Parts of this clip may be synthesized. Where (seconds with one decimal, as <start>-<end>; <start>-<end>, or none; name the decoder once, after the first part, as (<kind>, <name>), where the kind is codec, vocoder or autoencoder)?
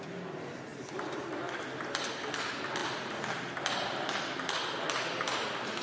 none